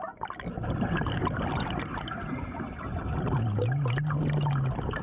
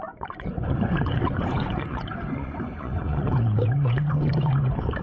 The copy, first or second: second